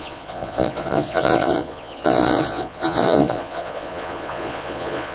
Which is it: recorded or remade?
remade